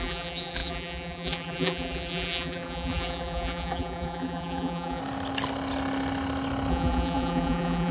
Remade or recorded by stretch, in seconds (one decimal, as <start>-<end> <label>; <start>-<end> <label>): 0.0-5.0 remade; 5.0-6.7 recorded; 6.7-7.9 remade